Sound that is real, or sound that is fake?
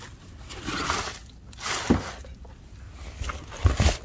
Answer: real